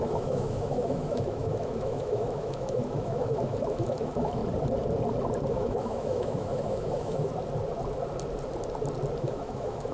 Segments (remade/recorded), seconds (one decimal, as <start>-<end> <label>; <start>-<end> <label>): 0.0-4.4 remade; 4.4-5.5 recorded; 5.5-7.3 remade; 7.3-9.2 recorded; 9.2-9.9 remade